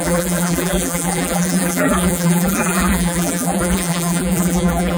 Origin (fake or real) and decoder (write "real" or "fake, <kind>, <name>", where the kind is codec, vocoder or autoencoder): fake, vocoder, BigVGAN v2